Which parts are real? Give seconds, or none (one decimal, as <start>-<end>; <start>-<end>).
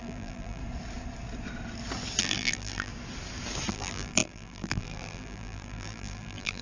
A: 0.6-2.2; 2.9-3.7